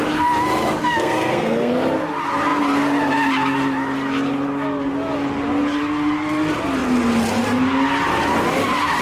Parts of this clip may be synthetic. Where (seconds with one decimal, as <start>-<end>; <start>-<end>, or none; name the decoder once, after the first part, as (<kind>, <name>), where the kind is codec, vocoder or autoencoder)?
0.8-1.7 (codec, SNAC)

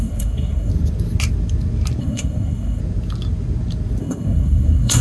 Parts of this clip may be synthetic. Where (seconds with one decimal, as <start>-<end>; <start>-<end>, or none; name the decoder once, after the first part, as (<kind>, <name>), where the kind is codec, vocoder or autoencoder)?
0.0-0.7 (codec, SNAC); 2.0-2.8; 4.0-5.0